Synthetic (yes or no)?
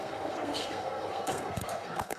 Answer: yes